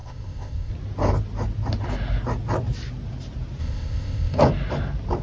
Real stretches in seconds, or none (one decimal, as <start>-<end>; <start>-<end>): 0.7-3.6; 4.4-5.2